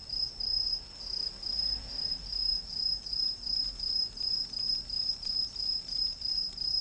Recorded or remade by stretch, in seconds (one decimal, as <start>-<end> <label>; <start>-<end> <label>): 0.0-6.8 recorded